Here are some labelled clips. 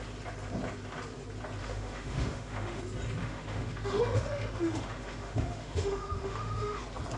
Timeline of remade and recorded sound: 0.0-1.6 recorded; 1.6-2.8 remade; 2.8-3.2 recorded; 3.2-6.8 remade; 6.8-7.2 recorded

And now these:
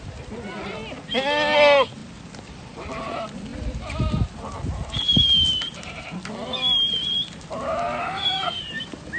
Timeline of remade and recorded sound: 0.0-8.0 recorded; 8.0-8.6 remade; 8.6-9.2 recorded

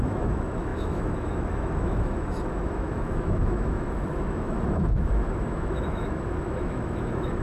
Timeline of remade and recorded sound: 0.0-7.4 remade